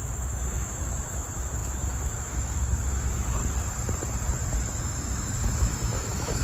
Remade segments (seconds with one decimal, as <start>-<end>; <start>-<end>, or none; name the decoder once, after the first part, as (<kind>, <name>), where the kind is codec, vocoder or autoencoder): 0.0-3.4 (autoencoder, DAC-VAE); 4.8-6.4